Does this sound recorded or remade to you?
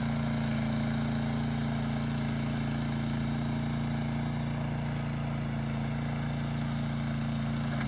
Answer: recorded